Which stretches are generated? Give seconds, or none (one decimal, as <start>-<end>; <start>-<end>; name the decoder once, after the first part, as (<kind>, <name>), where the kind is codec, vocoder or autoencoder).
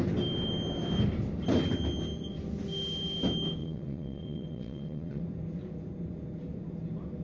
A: 3.6-5.2 (vocoder, WaveNeXt)